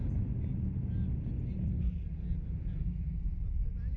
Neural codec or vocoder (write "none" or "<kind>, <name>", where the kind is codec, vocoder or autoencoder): none